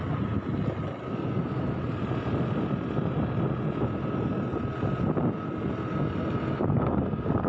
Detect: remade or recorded recorded